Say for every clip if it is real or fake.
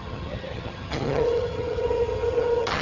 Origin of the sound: fake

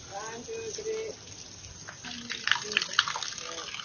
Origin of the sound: real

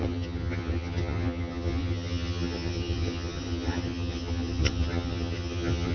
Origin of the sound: fake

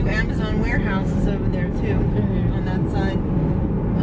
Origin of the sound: real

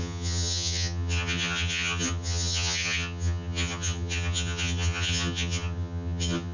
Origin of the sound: fake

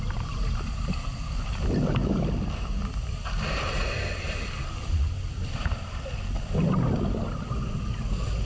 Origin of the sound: real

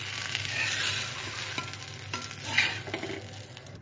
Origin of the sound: real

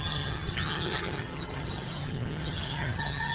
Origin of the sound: fake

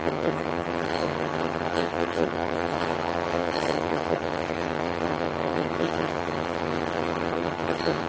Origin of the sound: fake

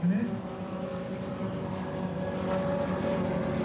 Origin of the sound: real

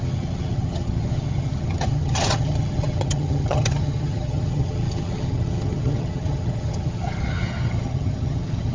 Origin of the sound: fake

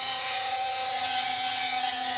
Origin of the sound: fake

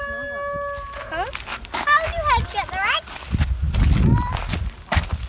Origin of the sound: real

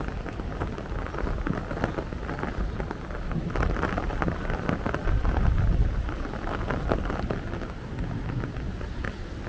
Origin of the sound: real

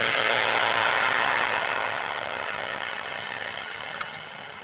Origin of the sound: fake